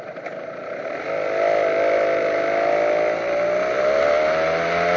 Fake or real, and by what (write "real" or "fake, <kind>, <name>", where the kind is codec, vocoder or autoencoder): real